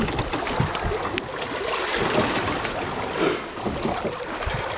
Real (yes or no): yes